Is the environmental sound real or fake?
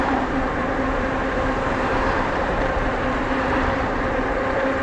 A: fake